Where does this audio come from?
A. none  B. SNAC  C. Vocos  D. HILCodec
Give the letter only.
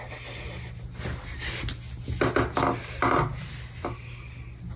A